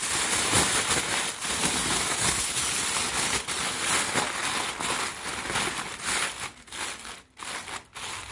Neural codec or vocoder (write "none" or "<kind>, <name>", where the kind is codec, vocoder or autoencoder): none